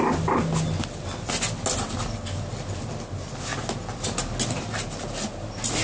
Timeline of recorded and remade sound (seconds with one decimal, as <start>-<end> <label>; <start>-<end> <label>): 0.0-5.8 recorded

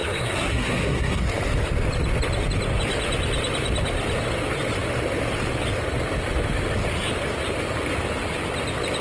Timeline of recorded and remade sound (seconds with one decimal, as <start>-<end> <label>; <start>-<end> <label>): 0.0-1.2 remade; 1.2-9.0 recorded

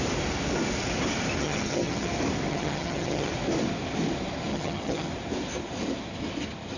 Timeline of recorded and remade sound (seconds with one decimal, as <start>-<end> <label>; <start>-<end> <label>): 0.0-1.4 recorded; 1.4-2.1 remade; 2.1-2.5 recorded; 2.5-3.3 remade; 3.3-4.5 recorded; 4.5-5.1 remade; 5.1-6.8 recorded

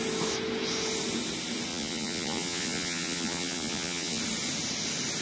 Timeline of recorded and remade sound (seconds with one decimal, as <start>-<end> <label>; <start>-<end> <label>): 0.0-1.7 recorded; 1.7-4.2 remade; 4.2-5.2 recorded

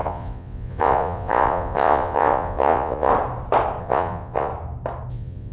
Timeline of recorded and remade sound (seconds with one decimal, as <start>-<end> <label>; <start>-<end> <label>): 0.0-3.1 remade; 3.1-3.8 recorded; 3.8-4.5 remade; 4.5-5.1 recorded; 5.1-5.5 remade